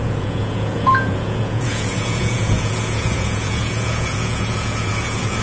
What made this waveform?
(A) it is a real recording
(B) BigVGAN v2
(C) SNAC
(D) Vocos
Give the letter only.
D